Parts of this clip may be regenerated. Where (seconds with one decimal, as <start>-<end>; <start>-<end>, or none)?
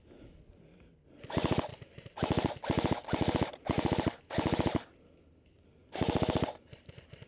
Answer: none